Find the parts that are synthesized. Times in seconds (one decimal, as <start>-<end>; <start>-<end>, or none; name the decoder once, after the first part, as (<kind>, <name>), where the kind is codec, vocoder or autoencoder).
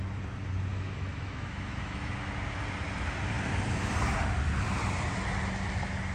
0.7-2.1 (autoencoder, DAC-VAE)